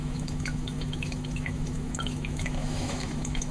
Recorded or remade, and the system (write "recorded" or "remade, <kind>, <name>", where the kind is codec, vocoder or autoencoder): remade, autoencoder, DAC-VAE